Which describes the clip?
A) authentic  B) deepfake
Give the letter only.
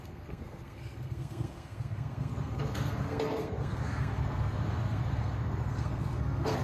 B